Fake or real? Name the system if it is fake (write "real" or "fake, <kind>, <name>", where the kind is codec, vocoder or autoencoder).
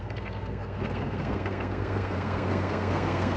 fake, codec, SNAC